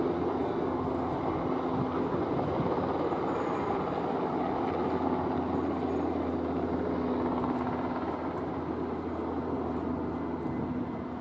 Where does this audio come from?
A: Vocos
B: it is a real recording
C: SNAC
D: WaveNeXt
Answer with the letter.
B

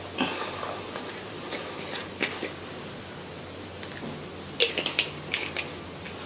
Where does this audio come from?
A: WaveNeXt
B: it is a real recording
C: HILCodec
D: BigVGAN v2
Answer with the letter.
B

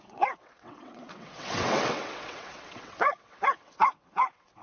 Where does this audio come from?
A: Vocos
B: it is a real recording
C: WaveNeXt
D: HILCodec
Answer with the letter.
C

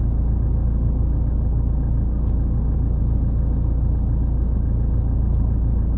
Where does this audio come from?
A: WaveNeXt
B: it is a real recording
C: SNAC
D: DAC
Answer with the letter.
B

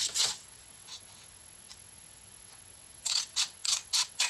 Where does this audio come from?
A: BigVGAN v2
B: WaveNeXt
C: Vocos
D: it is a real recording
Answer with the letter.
B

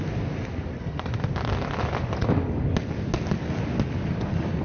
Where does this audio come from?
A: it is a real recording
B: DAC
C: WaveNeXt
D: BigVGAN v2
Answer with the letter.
A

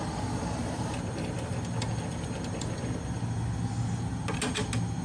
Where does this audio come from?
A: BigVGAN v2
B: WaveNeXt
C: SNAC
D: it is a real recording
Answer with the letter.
D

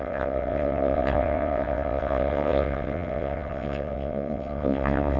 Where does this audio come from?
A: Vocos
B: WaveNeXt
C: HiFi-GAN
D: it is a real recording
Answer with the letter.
B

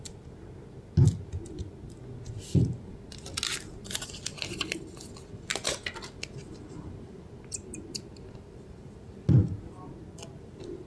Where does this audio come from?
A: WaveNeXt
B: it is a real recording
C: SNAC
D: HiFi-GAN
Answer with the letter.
B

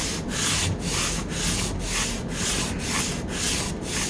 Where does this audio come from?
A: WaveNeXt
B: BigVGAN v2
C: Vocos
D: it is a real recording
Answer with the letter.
D